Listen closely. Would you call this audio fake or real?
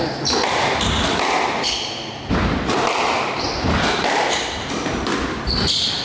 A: real